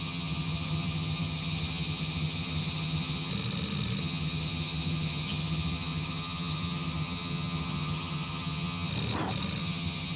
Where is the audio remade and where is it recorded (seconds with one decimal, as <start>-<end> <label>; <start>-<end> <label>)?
0.0-3.3 remade; 3.3-4.0 recorded; 4.0-8.9 remade; 8.9-9.6 recorded; 9.6-10.2 remade